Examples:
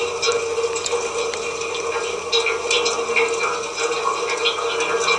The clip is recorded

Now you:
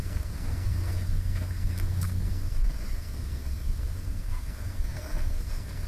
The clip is remade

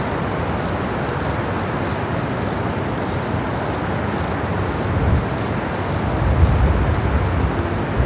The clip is recorded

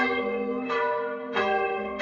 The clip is remade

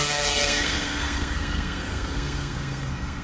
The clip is remade